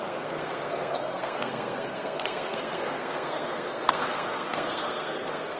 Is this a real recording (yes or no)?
no